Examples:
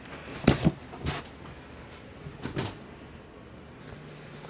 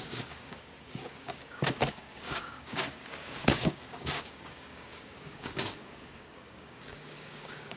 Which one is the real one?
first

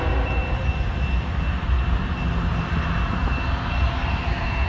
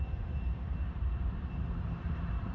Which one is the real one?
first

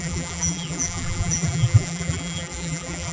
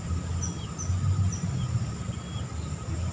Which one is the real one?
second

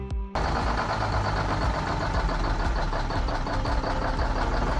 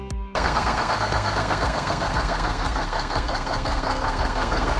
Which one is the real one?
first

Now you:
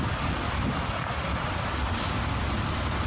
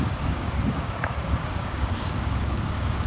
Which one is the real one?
first